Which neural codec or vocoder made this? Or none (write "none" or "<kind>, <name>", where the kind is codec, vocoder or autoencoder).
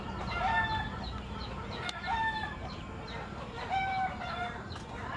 vocoder, BigVGAN v2